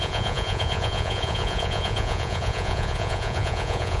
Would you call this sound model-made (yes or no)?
yes